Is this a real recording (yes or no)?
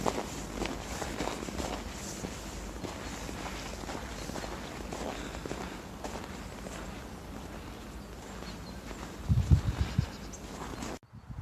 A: yes